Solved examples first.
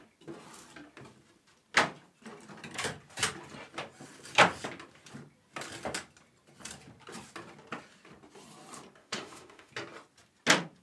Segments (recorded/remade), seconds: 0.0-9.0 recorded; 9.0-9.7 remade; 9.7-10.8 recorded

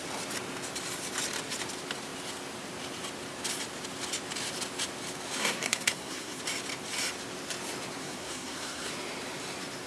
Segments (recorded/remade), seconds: 0.0-5.4 recorded; 5.4-6.4 remade; 6.4-8.0 recorded; 8.0-8.9 remade; 8.9-9.9 recorded

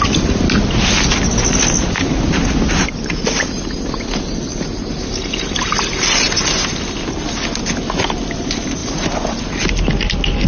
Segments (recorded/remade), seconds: 0.0-10.5 recorded

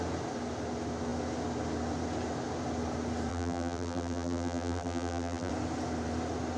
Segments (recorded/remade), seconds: 0.0-3.3 recorded; 3.3-5.5 remade; 5.5-6.6 recorded

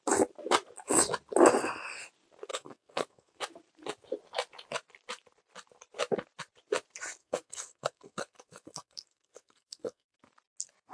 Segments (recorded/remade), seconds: 0.0-2.5 recorded; 2.5-3.4 remade; 3.4-7.2 recorded; 7.2-10.2 remade; 10.2-10.9 recorded

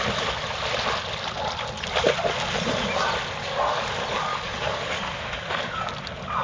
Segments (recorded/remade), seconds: 0.0-3.4 recorded; 3.4-3.9 remade; 3.9-4.3 recorded; 4.3-5.9 remade; 5.9-6.4 recorded

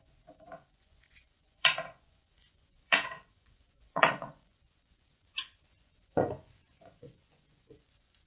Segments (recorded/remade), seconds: 0.0-8.3 remade

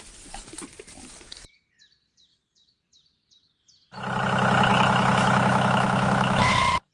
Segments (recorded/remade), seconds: 0.0-4.7 recorded; 4.7-6.9 remade